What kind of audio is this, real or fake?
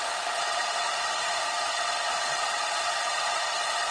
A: fake